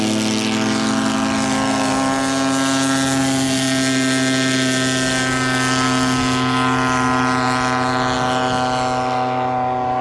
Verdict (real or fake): real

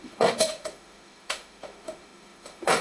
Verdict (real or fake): fake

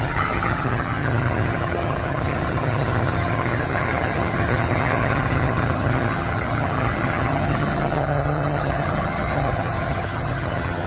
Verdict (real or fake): fake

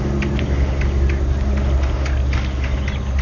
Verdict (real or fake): real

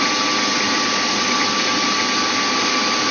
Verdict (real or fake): real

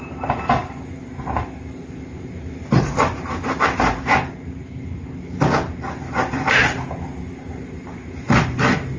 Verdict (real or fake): real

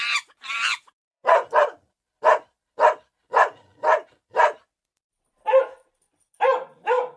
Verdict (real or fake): fake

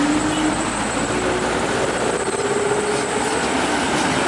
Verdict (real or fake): real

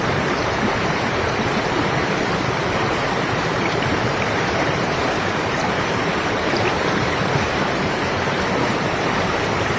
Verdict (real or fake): fake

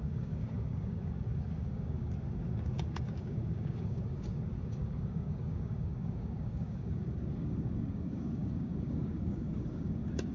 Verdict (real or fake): fake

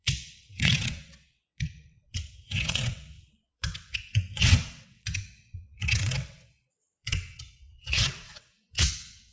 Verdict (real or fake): fake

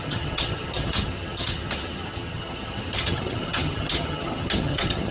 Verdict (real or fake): fake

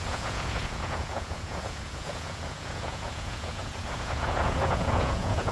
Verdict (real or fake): fake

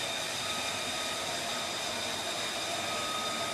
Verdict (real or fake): real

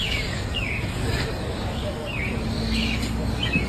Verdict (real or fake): fake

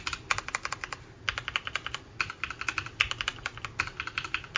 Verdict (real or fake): real